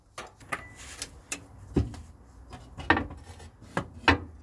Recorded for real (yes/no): yes